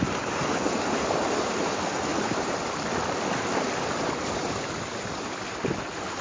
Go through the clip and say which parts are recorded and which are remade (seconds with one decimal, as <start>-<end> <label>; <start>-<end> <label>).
0.0-6.2 recorded

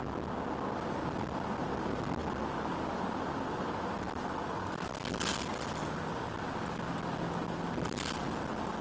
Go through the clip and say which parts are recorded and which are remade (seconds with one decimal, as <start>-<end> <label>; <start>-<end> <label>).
0.0-8.8 recorded

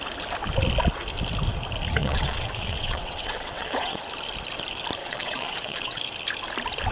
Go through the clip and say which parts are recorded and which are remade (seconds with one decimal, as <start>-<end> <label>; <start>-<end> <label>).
0.0-2.0 recorded; 2.0-4.0 remade; 4.0-5.0 recorded; 5.0-6.0 remade; 6.0-6.9 recorded

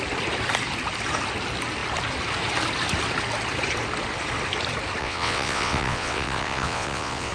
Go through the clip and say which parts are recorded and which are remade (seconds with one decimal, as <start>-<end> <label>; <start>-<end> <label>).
0.0-5.0 recorded; 5.0-7.3 remade